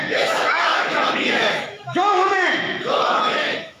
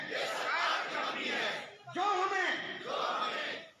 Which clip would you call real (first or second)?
second